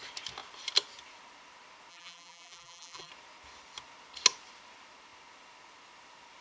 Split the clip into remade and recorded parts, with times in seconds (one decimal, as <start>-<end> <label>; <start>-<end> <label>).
0.0-1.9 recorded; 1.9-3.1 remade; 3.1-6.4 recorded